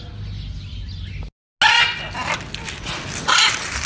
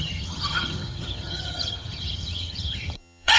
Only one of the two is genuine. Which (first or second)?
first